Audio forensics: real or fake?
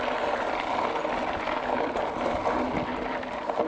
real